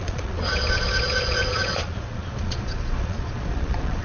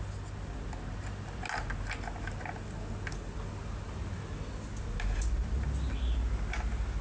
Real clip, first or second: second